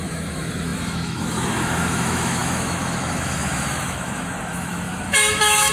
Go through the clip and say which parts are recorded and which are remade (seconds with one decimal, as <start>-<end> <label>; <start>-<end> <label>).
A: 0.0-5.7 remade